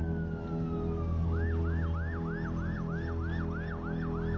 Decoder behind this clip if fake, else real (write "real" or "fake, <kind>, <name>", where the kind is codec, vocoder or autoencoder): real